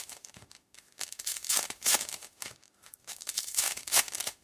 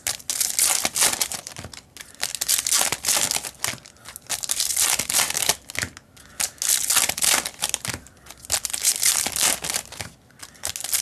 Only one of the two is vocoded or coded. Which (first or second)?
first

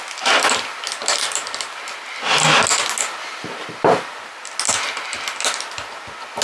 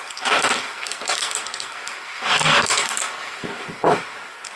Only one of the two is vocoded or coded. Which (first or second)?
second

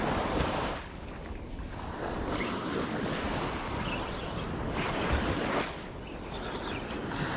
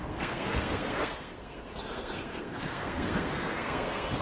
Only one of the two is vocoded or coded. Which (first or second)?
second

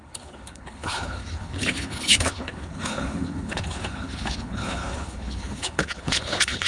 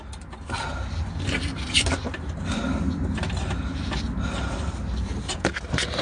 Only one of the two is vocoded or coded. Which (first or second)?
first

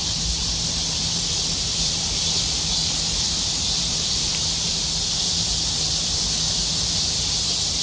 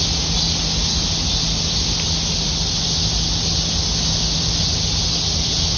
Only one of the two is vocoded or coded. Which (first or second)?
first